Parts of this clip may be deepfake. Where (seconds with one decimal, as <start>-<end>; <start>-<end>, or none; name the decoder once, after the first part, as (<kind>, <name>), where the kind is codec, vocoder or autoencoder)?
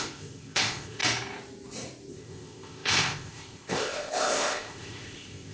0.0-1.0 (codec, ZipCodec); 2.1-5.5